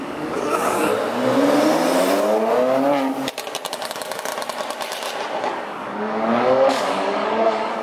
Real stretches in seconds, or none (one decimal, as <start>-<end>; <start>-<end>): 0.9-3.7; 4.3-5.4